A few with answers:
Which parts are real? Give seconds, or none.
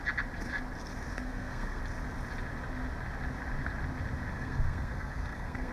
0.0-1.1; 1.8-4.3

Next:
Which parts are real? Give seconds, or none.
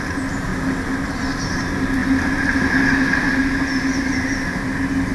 0.0-5.1